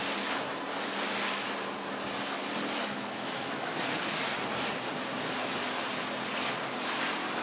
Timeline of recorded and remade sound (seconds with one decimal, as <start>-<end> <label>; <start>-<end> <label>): 0.0-2.8 recorded; 2.8-3.8 remade; 3.8-7.4 recorded